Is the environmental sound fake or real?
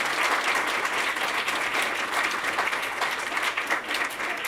real